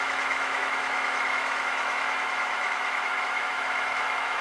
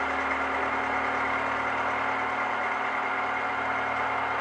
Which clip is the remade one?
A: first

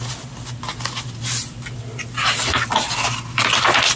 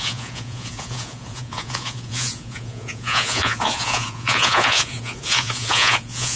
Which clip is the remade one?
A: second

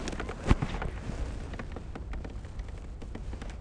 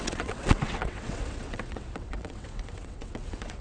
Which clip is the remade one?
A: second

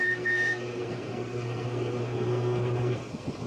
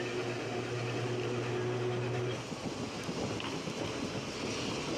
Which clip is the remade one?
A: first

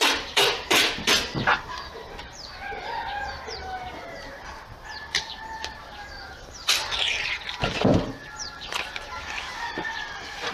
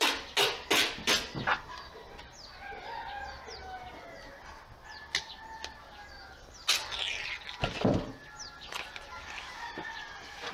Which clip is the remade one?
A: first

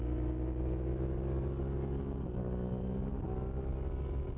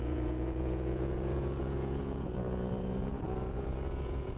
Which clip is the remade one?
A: second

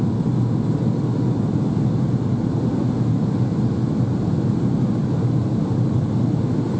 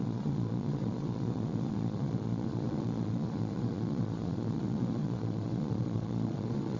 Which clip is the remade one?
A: second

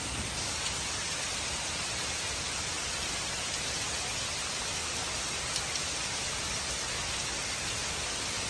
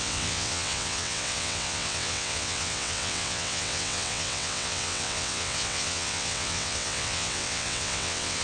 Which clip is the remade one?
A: second